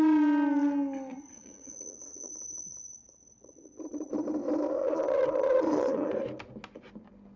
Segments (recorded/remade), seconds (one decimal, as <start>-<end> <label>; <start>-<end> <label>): 0.0-1.1 recorded; 1.1-2.3 remade; 2.3-3.0 recorded; 3.0-4.1 remade; 4.1-4.8 recorded; 4.8-6.1 remade; 6.1-7.4 recorded